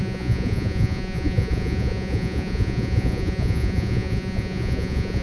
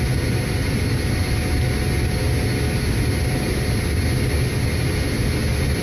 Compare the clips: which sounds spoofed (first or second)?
first